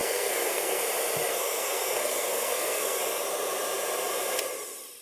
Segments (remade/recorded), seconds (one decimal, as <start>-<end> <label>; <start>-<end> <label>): 0.0-0.8 remade; 0.8-1.3 recorded; 1.3-3.0 remade; 3.0-5.0 recorded